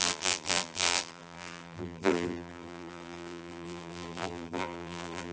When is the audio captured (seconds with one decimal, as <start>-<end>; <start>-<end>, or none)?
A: none